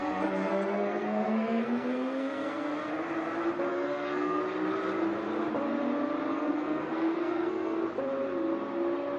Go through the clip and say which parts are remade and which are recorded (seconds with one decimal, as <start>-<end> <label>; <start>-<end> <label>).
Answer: 0.0-2.9 remade; 2.9-3.7 recorded; 3.7-4.4 remade; 4.4-6.3 recorded; 6.3-7.8 remade; 7.8-9.2 recorded